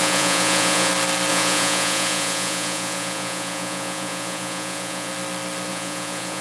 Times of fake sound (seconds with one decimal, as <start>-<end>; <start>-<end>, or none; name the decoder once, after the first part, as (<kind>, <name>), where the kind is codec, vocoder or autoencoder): 0.0-0.9 (vocoder, Vocos); 1.3-5.1; 5.7-6.4